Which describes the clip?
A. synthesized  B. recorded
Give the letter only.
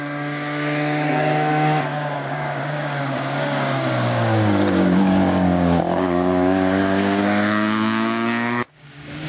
A